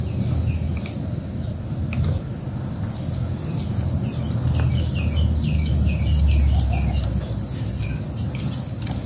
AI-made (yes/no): no